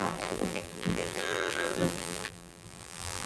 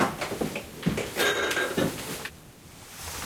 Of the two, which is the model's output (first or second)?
first